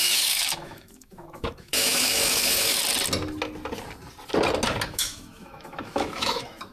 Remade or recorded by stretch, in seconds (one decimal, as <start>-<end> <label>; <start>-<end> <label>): 0.0-2.8 remade; 2.8-4.9 recorded; 4.9-6.7 remade